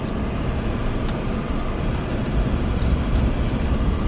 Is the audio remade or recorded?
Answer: recorded